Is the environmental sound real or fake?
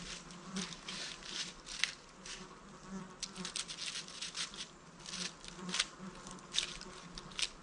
real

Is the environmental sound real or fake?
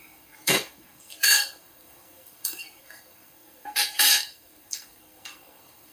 fake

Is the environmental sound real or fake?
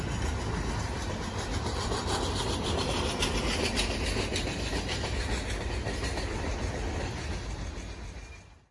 real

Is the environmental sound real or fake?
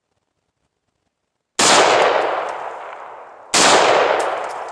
real